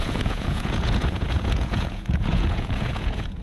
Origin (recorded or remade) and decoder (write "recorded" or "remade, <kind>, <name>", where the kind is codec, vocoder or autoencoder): remade, vocoder, Vocos